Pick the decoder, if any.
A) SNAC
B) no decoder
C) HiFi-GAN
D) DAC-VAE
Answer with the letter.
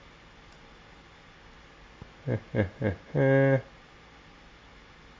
B